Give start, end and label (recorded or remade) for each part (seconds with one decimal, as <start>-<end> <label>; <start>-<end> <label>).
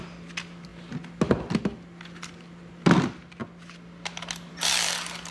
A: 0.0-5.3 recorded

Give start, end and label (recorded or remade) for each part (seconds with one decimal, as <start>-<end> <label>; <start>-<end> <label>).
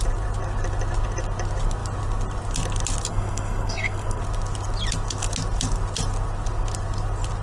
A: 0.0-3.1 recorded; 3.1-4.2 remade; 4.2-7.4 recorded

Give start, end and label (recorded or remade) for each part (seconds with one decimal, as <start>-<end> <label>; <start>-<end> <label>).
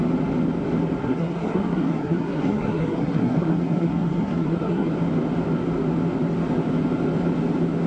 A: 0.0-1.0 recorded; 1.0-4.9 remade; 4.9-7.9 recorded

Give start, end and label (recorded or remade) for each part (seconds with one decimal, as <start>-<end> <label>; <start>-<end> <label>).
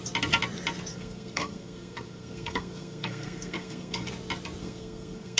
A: 0.0-0.9 recorded; 0.9-4.1 remade; 4.1-4.6 recorded; 4.6-5.4 remade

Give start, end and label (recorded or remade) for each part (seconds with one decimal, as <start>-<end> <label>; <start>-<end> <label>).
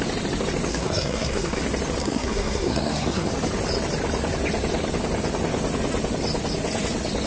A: 0.0-0.7 recorded; 0.7-1.6 remade; 1.6-2.0 recorded; 2.0-3.3 remade; 3.3-7.3 recorded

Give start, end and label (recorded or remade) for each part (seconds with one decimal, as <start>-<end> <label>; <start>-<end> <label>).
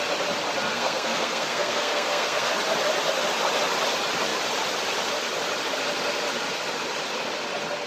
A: 0.0-0.7 recorded; 0.7-2.5 remade; 2.5-7.9 recorded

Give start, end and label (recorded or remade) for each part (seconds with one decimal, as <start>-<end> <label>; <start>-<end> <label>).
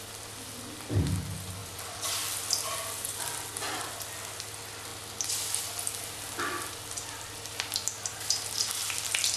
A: 0.0-9.4 recorded